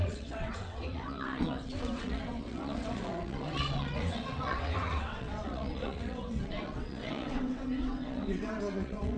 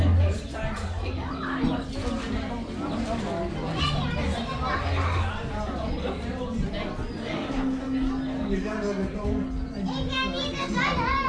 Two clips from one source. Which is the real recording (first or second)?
second